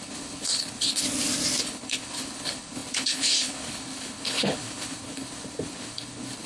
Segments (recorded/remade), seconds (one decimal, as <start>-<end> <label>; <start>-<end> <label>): 0.0-1.0 remade; 1.0-1.6 recorded; 1.6-6.5 remade

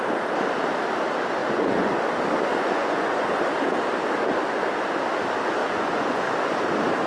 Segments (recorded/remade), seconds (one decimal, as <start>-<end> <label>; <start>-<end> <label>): 0.0-1.4 recorded; 1.4-2.0 remade; 2.0-2.5 recorded; 2.5-3.4 remade; 3.4-5.6 recorded; 5.6-6.2 remade; 6.2-7.1 recorded